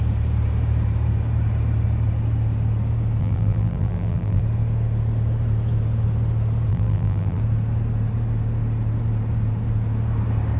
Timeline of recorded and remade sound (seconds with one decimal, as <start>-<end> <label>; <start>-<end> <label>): 0.0-3.2 recorded; 3.2-4.4 remade; 4.4-6.7 recorded; 6.7-7.4 remade; 7.4-10.6 recorded